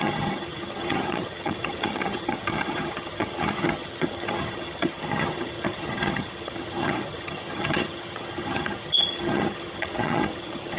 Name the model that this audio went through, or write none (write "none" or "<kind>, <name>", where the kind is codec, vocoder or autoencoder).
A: vocoder, HiFi-GAN